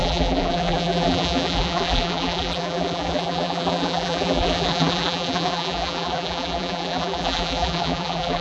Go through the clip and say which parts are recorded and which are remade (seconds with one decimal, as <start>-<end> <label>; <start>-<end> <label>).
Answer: 0.0-8.4 remade